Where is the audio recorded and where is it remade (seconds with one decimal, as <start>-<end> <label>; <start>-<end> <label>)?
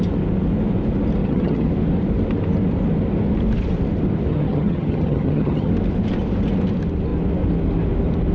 0.0-1.2 recorded; 1.2-1.7 remade; 1.7-4.3 recorded; 4.3-5.7 remade; 5.7-8.3 recorded